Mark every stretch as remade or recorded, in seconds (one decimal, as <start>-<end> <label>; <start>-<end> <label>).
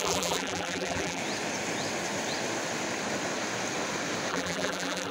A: 0.0-1.2 remade; 1.2-4.3 recorded; 4.3-5.1 remade